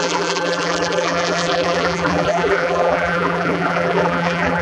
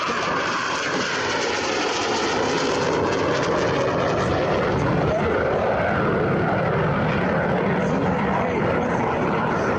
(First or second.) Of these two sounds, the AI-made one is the first